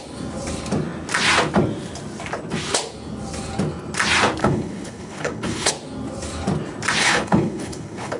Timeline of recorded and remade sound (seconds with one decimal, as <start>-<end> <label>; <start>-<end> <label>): 0.0-4.4 recorded; 4.4-5.7 remade; 5.7-7.0 recorded; 7.0-8.2 remade